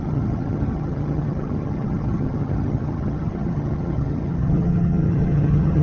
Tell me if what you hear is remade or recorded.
remade